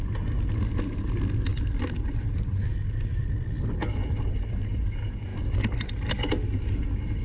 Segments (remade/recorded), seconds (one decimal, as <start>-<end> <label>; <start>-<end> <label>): 0.0-7.2 recorded